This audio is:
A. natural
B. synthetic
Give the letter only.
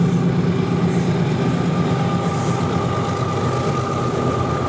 A